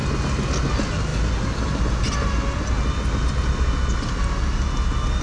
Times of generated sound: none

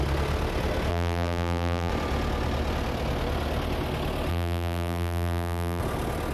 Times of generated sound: 0.9-1.9; 4.3-5.8

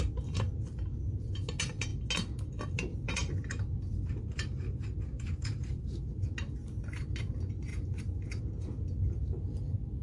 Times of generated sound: 2.9-6.0; 7.7-8.4

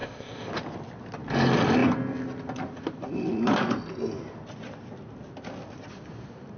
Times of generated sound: 0.0-0.5

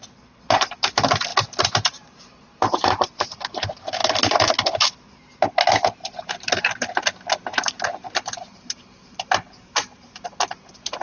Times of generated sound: 1.3-3.4; 4.0-4.8; 6.0-7.0; 7.5-10.2

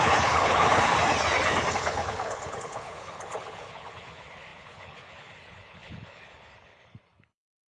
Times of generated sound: 0.0-0.9; 1.7-7.7